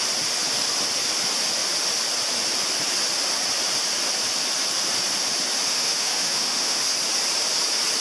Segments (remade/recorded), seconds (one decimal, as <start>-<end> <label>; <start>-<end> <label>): 0.0-5.7 recorded; 5.7-6.8 remade; 6.8-8.0 recorded

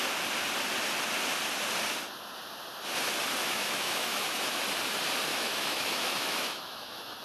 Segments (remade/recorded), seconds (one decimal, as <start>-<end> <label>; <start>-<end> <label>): 0.0-3.4 recorded; 3.4-4.6 remade; 4.6-5.3 recorded; 5.3-7.2 remade

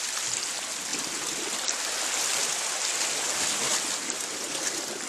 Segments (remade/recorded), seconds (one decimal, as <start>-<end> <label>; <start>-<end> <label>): 0.0-5.1 recorded

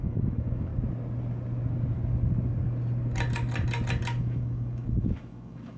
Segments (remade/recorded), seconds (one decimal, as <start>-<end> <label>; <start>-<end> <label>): 0.0-0.7 remade; 0.7-4.2 recorded; 4.2-5.8 remade

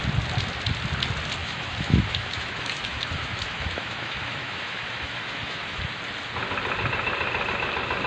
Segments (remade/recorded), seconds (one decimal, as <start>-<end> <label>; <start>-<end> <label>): 0.0-1.4 recorded; 1.4-5.8 remade; 5.8-8.1 recorded